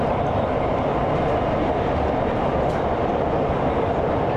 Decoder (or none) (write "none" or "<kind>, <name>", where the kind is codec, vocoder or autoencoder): vocoder, BigVGAN v2